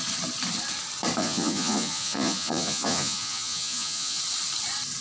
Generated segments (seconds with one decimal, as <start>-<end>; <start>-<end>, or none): 1.2-4.2

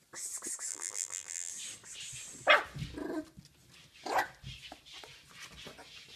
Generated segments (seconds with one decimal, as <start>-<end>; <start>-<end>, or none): 0.7-1.5

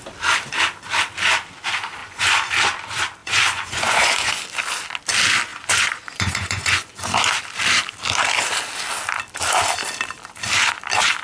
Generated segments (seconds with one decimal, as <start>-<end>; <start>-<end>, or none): 2.0-2.5; 3.2-4.4; 5.5-7.0

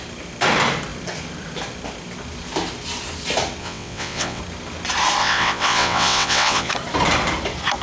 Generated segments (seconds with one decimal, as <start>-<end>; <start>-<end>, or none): 3.6-4.4; 5.2-6.7

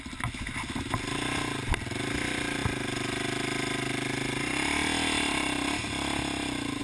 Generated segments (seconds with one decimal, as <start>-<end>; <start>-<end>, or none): none